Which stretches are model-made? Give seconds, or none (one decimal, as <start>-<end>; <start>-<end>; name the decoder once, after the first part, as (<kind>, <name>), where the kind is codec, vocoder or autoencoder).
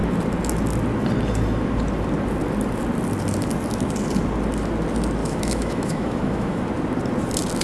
5.2-6.6 (autoencoder, DAC-VAE)